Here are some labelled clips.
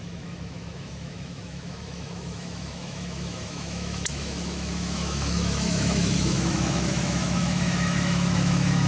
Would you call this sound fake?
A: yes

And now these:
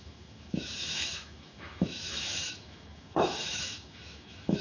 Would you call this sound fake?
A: yes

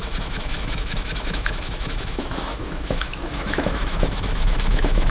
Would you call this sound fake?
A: yes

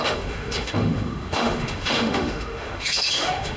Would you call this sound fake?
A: yes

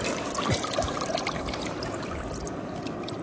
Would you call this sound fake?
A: no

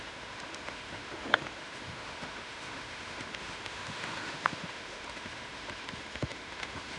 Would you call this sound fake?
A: yes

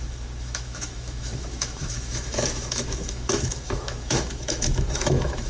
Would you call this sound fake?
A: yes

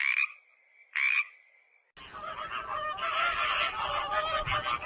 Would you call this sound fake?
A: no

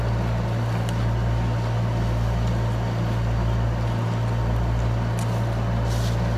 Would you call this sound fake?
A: no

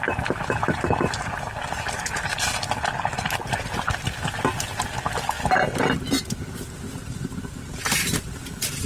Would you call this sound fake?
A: no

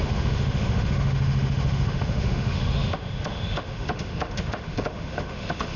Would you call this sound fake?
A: yes